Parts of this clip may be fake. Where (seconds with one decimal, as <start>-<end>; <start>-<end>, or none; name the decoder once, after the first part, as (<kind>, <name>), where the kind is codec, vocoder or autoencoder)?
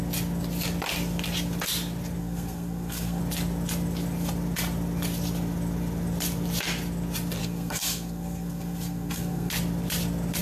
2.2-3.2 (codec, SNAC); 7.4-9.5